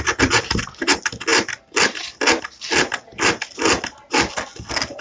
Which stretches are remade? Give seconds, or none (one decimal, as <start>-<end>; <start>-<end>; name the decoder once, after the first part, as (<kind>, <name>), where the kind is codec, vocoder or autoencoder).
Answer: none